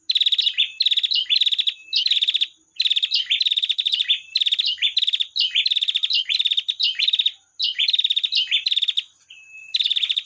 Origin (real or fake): real